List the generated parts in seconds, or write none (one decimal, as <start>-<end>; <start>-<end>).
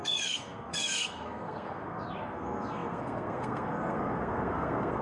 0.0-5.0